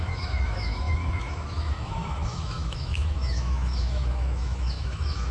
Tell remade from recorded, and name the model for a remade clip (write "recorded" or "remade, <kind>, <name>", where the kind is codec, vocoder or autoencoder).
remade, autoencoder, DAC-VAE